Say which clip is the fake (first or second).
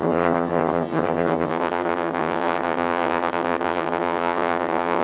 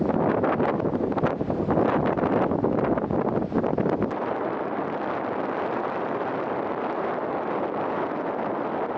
first